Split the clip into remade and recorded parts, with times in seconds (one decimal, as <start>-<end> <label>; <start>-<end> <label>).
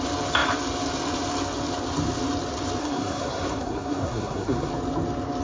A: 0.0-2.8 recorded; 2.8-4.7 remade; 4.7-5.4 recorded